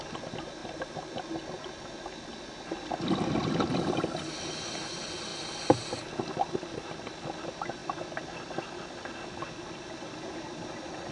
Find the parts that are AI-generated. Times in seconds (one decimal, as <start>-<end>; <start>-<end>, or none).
none